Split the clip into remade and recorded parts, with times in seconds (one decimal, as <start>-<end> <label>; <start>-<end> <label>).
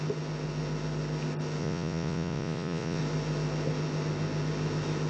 0.0-1.6 recorded; 1.6-3.0 remade; 3.0-5.1 recorded